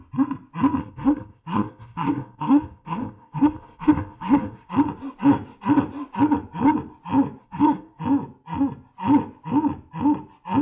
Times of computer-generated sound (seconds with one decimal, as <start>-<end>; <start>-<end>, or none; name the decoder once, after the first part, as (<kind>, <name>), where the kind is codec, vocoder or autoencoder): 0.8-4.7 (codec, SNAC); 7.4-8.0